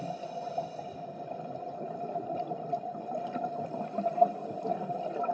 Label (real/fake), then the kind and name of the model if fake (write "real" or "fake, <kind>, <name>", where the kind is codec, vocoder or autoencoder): real